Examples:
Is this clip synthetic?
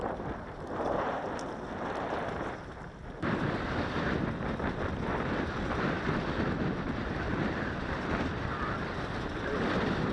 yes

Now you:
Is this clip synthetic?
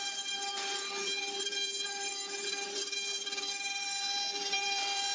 yes